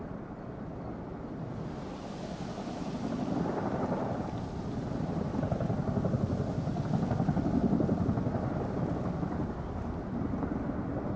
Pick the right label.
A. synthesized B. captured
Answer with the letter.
B